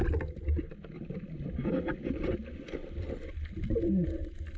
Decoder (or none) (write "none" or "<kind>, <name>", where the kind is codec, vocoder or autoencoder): none